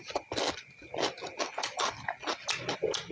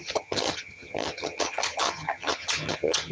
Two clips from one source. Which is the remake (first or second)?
second